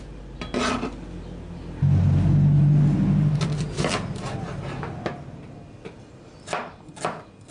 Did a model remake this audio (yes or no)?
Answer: no